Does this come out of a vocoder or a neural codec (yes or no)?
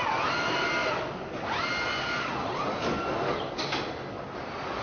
no